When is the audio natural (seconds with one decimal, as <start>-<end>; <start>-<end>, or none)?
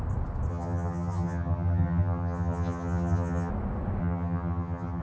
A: 0.0-0.5; 3.5-4.0